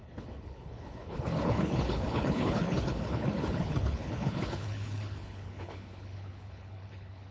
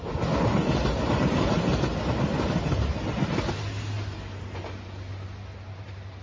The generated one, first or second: first